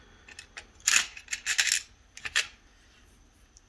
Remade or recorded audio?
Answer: recorded